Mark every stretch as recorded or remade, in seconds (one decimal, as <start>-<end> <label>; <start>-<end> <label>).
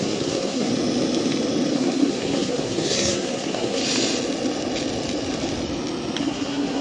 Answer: 0.0-0.7 remade; 0.7-1.7 recorded; 1.7-3.8 remade; 3.8-6.2 recorded; 6.2-6.8 remade